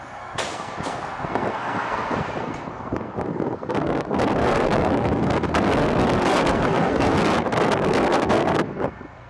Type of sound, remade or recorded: remade